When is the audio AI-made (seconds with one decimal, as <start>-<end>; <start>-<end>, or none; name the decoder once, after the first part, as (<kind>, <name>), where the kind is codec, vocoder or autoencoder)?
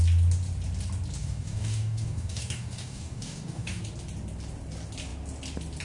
1.2-3.8 (codec, DAC)